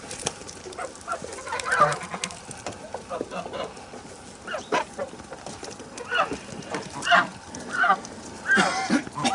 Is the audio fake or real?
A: real